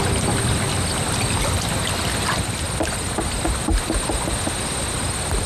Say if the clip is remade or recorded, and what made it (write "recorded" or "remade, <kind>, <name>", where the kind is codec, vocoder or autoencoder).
recorded